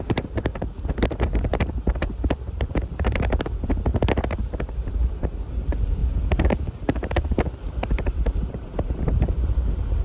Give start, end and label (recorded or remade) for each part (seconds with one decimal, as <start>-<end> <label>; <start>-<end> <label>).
0.0-0.5 remade; 0.5-1.2 recorded; 1.2-3.9 remade; 3.9-4.7 recorded; 4.7-6.0 remade; 6.0-8.5 recorded; 8.5-10.0 remade